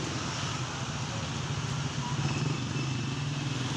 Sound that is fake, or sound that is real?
real